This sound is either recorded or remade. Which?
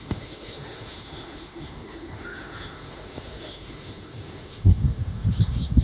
remade